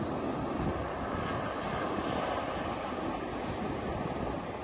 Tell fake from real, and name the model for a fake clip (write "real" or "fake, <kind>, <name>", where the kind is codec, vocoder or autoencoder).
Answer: real